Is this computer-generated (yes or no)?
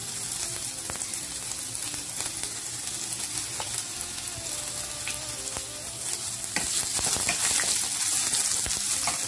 no